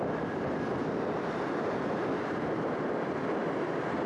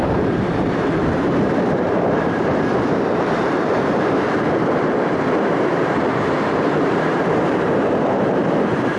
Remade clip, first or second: second